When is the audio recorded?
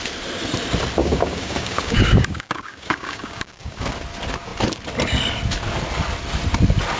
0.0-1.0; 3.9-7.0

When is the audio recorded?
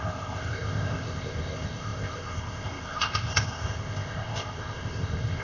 none